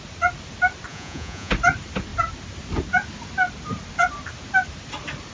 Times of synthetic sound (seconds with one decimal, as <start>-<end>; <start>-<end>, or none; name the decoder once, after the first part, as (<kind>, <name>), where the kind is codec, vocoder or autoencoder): 0.9-1.5 (vocoder, Vocos)